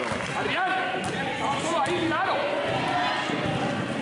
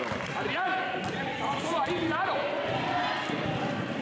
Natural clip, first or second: first